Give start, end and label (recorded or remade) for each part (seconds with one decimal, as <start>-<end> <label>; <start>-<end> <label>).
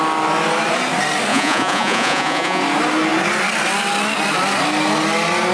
0.0-1.3 recorded; 1.3-2.6 remade; 2.6-5.5 recorded